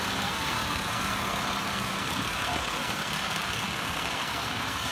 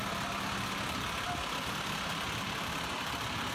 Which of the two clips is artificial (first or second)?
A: first